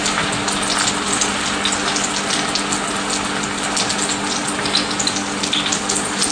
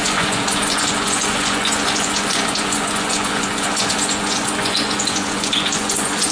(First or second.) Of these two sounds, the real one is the first